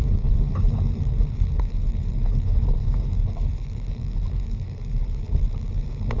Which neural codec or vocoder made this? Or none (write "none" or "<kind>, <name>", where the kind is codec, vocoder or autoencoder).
codec, HILCodec